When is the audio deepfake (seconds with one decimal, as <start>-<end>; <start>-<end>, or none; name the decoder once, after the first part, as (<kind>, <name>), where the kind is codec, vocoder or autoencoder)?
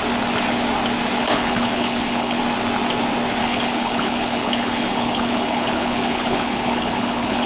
1.2-2.4 (codec, HILCodec); 3.4-7.5